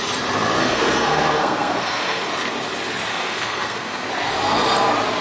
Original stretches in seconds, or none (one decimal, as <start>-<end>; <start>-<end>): 0.0-0.6; 2.3-3.1; 4.1-5.2